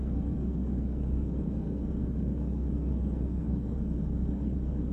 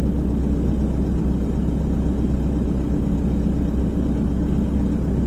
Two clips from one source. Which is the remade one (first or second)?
first